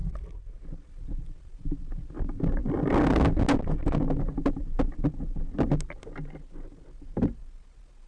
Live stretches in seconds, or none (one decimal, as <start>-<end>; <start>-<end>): 0.0-8.1